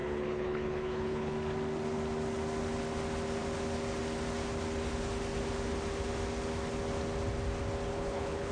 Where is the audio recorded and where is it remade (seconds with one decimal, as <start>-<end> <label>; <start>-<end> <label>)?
0.0-1.3 remade; 1.3-7.9 recorded; 7.9-8.5 remade